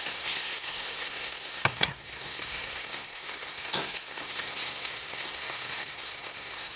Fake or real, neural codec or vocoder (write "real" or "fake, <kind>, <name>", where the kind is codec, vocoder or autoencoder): fake, codec, SNAC